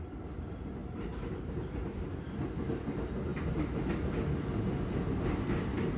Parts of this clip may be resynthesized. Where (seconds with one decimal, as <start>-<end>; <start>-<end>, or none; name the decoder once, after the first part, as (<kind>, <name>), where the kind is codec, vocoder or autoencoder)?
0.8-1.5 (vocoder, BigVGAN v2)